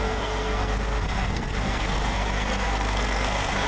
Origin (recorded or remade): remade